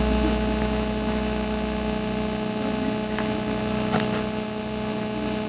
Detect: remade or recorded recorded